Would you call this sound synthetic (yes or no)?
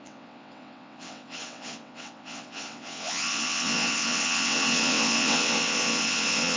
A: yes